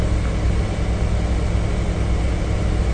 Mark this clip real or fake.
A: real